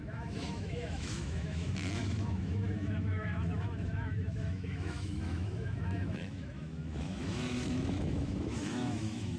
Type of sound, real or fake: fake